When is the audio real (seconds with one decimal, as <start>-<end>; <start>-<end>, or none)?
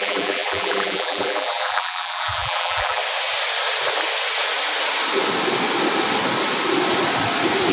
3.0-7.7